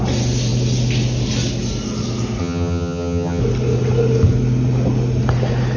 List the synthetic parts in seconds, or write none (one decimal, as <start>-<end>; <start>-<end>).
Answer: 2.4-3.4